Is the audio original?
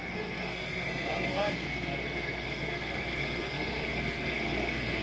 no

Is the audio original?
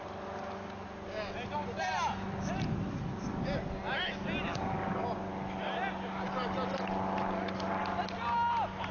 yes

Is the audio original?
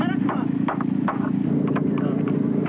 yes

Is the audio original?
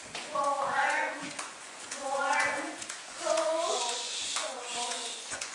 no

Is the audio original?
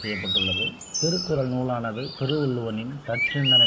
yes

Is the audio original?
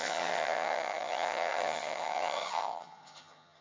no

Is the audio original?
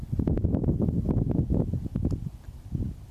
yes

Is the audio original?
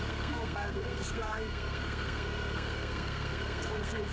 no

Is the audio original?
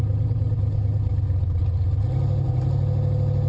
yes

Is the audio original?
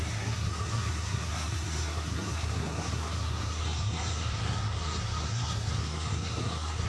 no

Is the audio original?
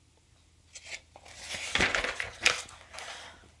yes